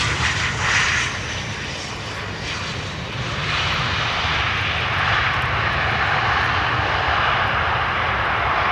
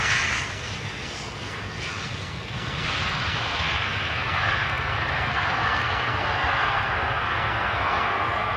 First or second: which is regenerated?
second